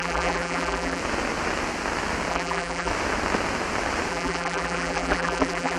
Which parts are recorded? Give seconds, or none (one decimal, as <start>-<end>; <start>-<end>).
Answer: 1.0-2.3; 2.9-4.1